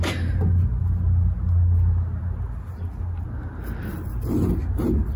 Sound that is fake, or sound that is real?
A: real